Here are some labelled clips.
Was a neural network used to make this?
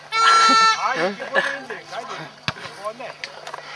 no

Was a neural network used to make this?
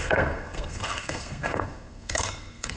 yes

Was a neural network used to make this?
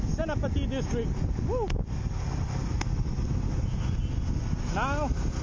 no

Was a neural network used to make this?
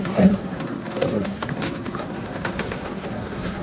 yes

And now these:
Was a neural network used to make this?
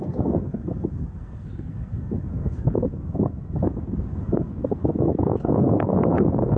yes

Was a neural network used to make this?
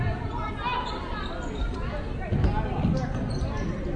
no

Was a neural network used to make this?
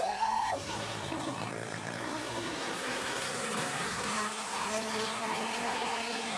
yes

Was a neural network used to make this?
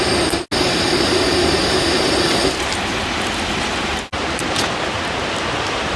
no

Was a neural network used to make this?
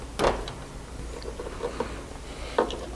no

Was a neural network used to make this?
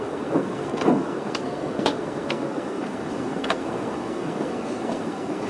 yes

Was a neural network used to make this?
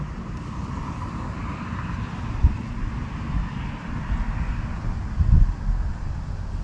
no